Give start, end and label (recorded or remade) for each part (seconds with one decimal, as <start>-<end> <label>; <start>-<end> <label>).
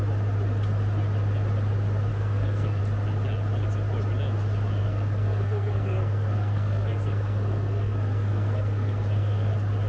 0.0-2.1 recorded; 2.1-2.8 remade; 2.8-4.8 recorded; 4.8-9.5 remade; 9.5-9.9 recorded